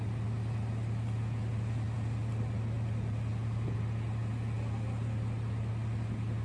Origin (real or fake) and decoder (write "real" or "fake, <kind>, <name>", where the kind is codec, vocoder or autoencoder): real